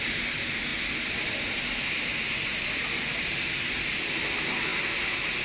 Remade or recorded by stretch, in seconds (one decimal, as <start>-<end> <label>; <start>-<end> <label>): 0.0-5.4 recorded